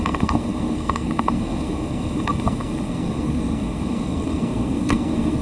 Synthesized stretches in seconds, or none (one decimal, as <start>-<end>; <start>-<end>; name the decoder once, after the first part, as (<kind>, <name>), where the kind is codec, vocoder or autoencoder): 0.0-5.4 (codec, SNAC)